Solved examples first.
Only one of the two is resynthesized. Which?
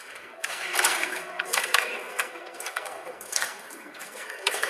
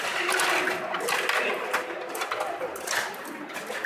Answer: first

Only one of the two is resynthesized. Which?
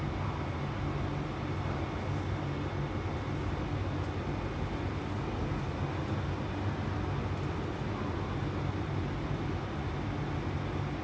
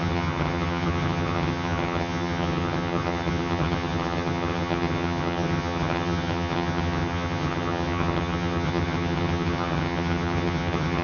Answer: second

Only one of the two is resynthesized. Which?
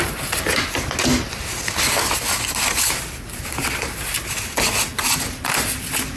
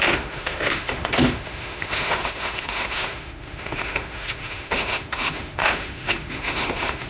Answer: second